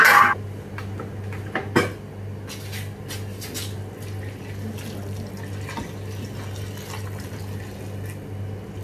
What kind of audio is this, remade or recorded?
recorded